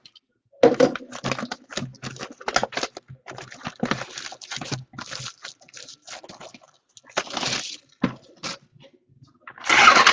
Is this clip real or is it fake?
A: real